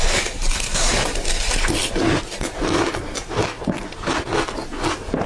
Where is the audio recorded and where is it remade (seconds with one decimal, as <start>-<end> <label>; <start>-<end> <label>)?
0.0-5.3 recorded